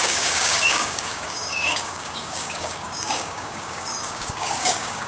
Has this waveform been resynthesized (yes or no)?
yes